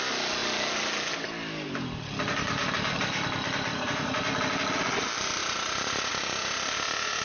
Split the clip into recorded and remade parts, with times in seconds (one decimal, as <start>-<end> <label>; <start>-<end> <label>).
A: 0.0-3.7 recorded; 3.7-4.2 remade; 4.2-5.4 recorded; 5.4-7.2 remade